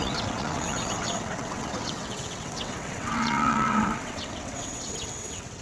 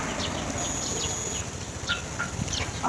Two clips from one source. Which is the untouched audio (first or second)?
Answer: second